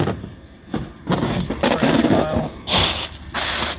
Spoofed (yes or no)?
no